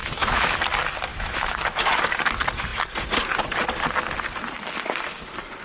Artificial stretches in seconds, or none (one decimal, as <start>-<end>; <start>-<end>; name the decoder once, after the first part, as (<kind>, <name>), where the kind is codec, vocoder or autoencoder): 0.0-0.6 (autoencoder, DAC-VAE); 1.1-2.0